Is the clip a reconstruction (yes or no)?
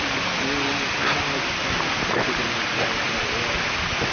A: no